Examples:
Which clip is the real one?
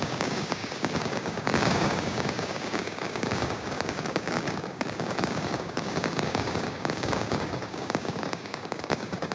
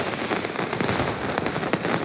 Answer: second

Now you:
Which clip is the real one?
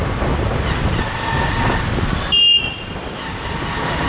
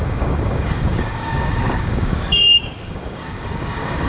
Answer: first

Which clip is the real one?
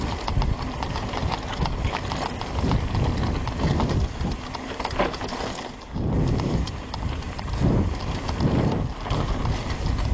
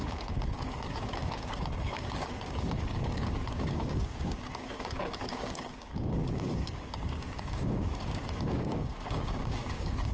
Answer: first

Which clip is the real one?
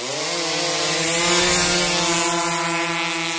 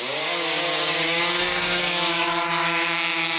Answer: first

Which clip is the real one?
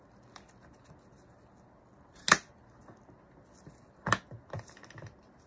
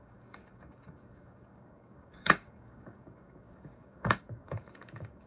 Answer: first